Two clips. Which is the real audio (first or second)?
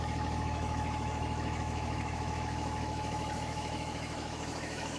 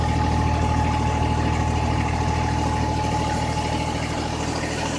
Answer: second